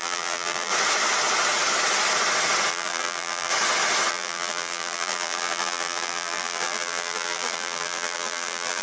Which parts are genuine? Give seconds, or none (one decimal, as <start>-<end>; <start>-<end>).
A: 0.7-2.7; 3.5-4.1